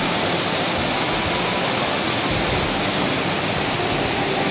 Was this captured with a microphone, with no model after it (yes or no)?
yes